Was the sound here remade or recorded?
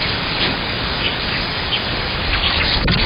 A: remade